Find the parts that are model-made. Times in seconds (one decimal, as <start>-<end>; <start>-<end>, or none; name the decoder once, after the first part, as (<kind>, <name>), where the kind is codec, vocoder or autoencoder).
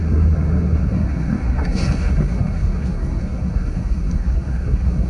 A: 0.0-5.1 (codec, SNAC)